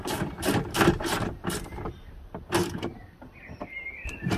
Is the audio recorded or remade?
remade